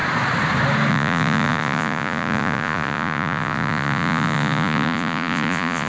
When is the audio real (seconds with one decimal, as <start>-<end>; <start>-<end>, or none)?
0.0-0.9